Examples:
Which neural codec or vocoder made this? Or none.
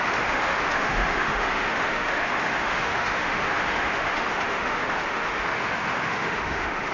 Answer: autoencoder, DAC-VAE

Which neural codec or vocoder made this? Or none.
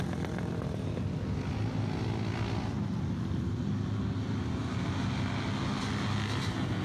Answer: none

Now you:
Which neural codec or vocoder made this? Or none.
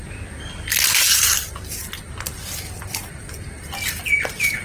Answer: none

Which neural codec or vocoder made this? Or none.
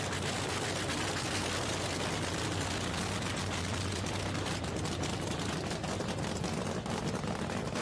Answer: none